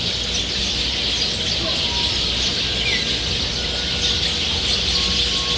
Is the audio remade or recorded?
recorded